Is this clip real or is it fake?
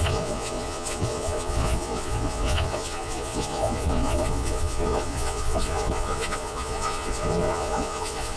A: fake